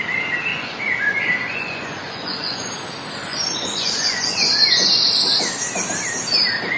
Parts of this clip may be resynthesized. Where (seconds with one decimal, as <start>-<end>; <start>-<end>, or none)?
0.5-2.7; 3.3-4.9